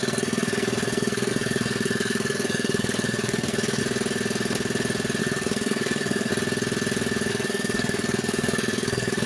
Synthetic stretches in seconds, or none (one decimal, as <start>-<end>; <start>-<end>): 0.0-3.8; 5.2-6.3; 7.3-9.3